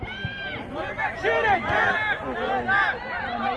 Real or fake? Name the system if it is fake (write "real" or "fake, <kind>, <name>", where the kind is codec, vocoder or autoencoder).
real